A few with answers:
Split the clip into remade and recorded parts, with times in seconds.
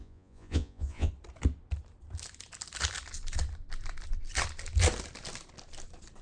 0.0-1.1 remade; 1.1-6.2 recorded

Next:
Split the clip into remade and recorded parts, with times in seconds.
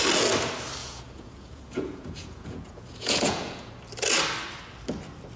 0.0-0.8 recorded; 0.8-3.7 remade; 3.7-5.4 recorded